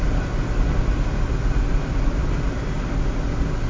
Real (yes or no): yes